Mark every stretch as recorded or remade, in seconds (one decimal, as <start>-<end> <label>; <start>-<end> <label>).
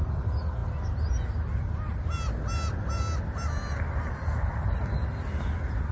0.0-5.9 recorded